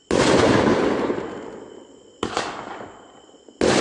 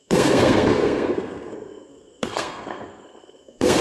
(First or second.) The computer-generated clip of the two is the second